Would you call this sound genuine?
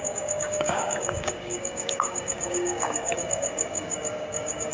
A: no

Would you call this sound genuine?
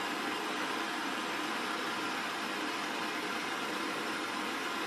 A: no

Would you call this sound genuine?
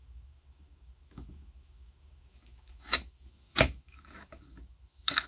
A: no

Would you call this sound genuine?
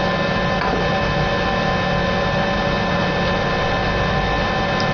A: yes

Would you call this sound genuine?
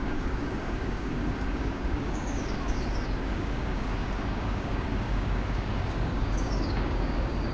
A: no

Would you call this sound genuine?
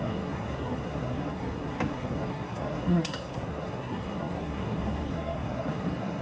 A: no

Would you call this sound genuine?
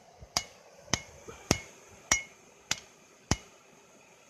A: no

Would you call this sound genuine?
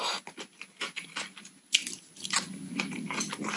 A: yes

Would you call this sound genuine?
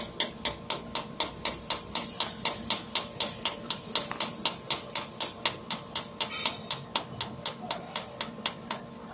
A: yes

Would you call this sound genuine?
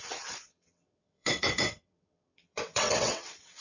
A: no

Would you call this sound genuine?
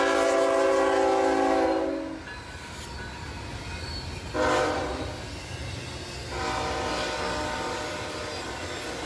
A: yes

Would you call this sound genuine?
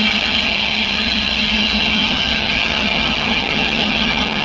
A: no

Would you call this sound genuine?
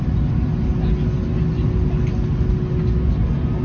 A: yes